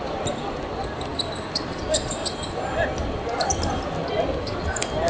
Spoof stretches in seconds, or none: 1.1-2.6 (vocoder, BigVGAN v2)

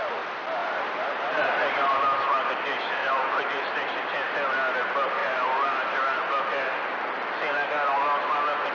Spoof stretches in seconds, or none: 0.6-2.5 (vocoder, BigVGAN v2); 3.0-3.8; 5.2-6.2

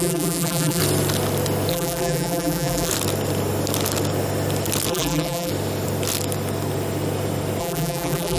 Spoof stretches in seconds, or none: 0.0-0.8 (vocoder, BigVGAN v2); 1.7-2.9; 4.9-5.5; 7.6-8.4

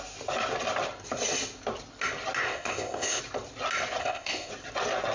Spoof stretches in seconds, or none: 2.4-3.2 (codec, ZipCodec); 4.0-4.5

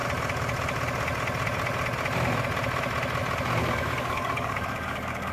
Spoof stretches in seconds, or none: 3.6-5.3 (codec, DAC)

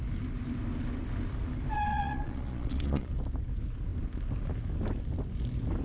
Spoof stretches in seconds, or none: 1.9-3.1 (vocoder, Vocos)